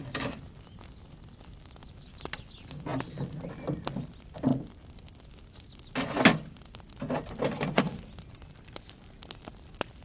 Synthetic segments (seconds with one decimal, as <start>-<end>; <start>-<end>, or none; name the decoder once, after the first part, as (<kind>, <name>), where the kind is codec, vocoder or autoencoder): none

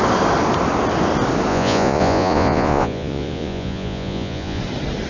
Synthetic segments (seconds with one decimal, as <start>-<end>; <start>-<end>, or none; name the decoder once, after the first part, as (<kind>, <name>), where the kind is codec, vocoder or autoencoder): 1.5-4.6 (vocoder, Vocos)

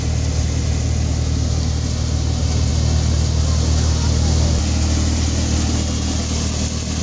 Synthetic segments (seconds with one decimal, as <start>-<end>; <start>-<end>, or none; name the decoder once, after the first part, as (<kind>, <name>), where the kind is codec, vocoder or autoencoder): none

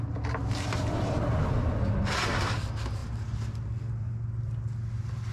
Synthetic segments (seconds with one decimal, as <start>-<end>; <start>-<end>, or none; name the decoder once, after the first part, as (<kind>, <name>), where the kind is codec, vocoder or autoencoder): none

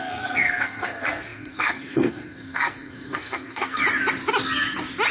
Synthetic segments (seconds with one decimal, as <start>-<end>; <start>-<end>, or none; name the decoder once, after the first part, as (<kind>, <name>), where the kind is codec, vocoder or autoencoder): 0.0-3.8 (codec, SNAC)